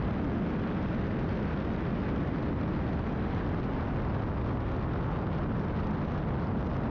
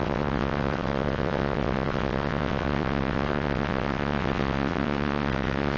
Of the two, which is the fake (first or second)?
second